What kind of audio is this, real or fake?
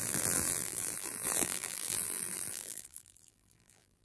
fake